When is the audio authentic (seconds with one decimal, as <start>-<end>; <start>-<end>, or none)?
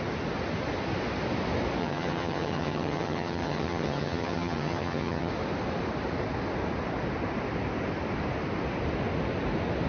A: 0.0-1.8; 5.3-9.9